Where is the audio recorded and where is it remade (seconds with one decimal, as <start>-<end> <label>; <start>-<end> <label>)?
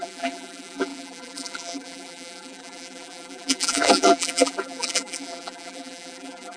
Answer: 0.0-6.6 remade